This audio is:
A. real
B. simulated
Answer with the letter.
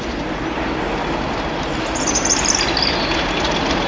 A